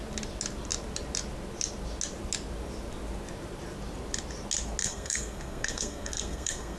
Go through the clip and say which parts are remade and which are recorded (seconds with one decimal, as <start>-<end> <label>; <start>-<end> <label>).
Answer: 0.0-4.8 recorded; 4.8-6.8 remade